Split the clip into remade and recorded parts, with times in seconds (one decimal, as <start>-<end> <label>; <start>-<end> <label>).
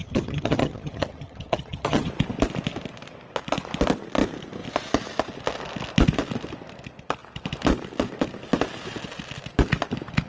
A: 0.0-2.1 remade; 2.1-10.3 recorded